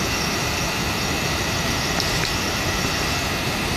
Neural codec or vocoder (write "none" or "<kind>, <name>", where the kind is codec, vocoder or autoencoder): none